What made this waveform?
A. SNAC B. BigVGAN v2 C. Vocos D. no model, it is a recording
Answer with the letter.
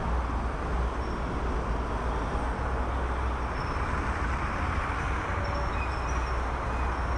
D